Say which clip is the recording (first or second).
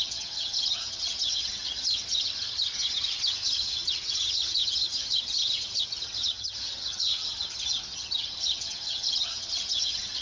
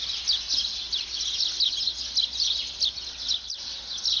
second